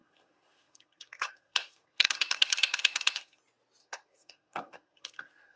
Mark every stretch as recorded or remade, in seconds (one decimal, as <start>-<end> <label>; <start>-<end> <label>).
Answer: 0.0-3.4 remade; 3.4-3.8 recorded; 3.8-5.6 remade